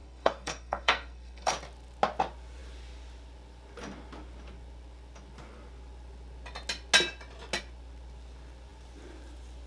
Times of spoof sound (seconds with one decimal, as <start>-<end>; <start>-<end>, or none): 0.0-1.5